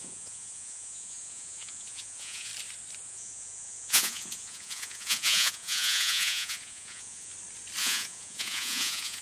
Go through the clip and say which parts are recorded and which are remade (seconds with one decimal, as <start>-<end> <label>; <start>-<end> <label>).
0.0-2.5 remade; 2.5-3.0 recorded; 3.0-7.3 remade; 7.3-7.8 recorded; 7.8-9.2 remade